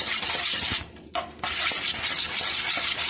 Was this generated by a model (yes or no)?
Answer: no